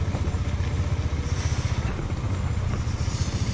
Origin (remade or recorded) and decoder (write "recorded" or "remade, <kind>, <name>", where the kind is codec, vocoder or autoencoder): recorded